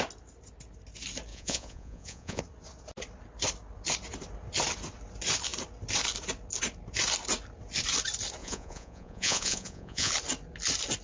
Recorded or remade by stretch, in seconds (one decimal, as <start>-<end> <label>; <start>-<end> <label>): 0.0-1.3 recorded; 1.3-2.4 remade; 2.4-8.4 recorded; 8.4-10.1 remade; 10.1-11.0 recorded